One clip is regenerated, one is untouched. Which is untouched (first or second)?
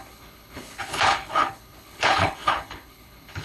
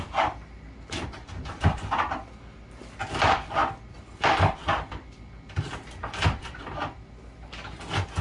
second